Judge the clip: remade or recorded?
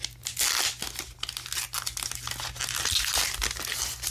recorded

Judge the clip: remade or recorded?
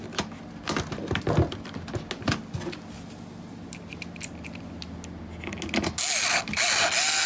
recorded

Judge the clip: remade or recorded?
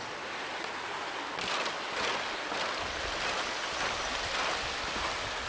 recorded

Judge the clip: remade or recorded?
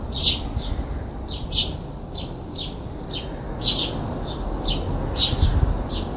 recorded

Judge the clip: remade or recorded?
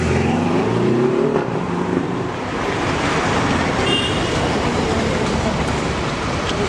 remade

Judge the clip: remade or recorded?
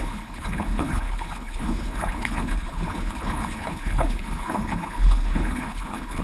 remade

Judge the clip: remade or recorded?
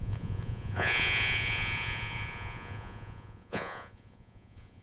remade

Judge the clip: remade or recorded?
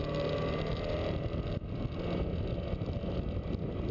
recorded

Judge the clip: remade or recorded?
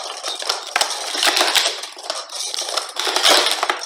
recorded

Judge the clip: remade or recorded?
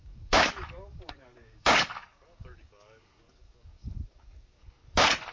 remade